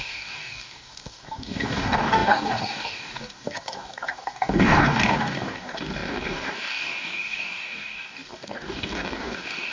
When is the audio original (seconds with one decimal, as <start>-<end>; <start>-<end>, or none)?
none